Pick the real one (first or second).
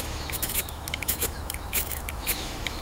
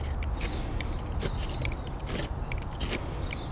second